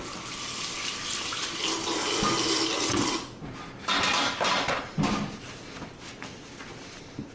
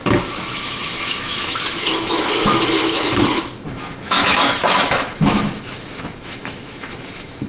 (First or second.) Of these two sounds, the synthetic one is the second